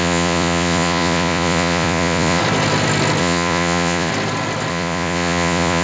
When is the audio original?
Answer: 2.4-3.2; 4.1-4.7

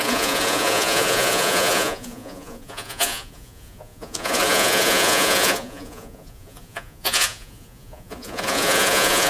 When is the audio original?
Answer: none

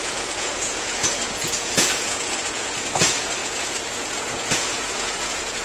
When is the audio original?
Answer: none

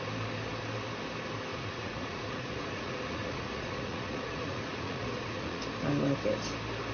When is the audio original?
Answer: 0.0-1.5; 5.6-6.9

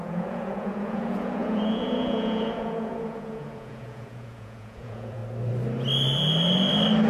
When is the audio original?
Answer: 5.2-7.1

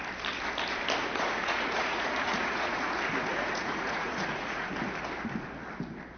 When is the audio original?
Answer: 0.0-1.0; 2.9-3.3; 4.7-6.2